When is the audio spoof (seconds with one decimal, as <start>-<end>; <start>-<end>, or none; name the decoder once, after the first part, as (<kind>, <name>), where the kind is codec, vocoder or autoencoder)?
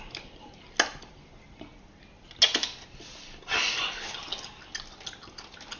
none